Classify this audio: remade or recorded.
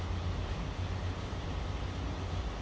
recorded